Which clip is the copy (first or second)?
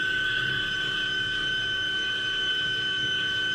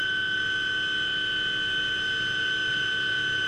first